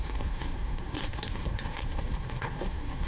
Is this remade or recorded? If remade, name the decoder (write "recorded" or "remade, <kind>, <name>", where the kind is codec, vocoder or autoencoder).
remade, codec, SNAC